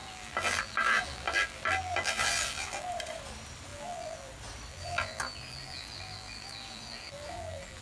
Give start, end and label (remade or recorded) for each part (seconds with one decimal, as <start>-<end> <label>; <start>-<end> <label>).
0.0-2.9 remade; 2.9-3.7 recorded; 3.7-4.3 remade; 4.3-4.7 recorded; 4.7-7.8 remade